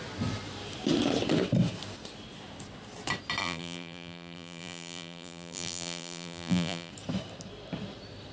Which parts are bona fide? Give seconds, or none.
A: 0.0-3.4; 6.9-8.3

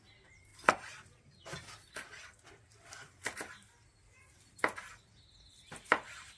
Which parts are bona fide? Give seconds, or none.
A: 0.0-6.4

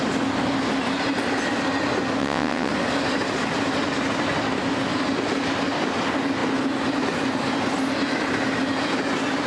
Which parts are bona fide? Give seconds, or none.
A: 0.0-2.2; 2.7-9.5

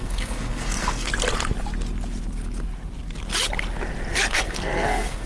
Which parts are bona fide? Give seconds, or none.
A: 1.1-4.3

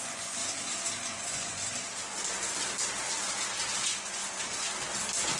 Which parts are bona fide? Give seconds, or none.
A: 0.4-1.0; 1.6-3.8; 4.2-5.4

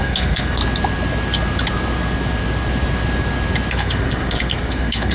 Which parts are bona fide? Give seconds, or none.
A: 0.6-3.7

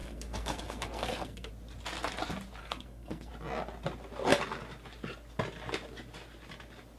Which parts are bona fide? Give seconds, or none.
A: 1.5-2.6; 3.3-7.0